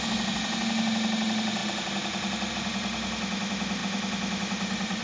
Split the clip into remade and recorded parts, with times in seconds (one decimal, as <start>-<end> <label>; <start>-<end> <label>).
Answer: 0.0-5.0 recorded

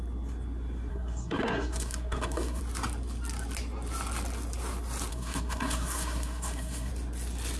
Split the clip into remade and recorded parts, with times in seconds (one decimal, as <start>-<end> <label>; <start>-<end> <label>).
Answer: 0.0-0.9 recorded; 0.9-2.6 remade; 2.6-5.1 recorded; 5.1-6.9 remade; 6.9-7.6 recorded

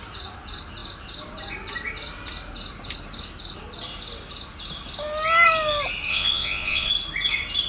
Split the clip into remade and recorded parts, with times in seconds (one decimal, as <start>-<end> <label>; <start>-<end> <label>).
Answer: 0.0-6.1 recorded; 6.1-6.9 remade; 6.9-7.7 recorded

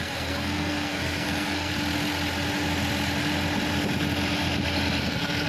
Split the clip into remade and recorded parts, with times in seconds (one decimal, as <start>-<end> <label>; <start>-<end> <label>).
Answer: 0.0-1.7 remade; 1.7-5.0 recorded; 5.0-5.5 remade